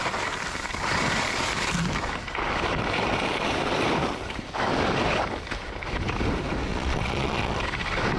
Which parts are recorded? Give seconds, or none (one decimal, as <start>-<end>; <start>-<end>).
0.0-6.7; 7.6-8.2